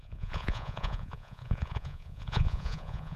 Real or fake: fake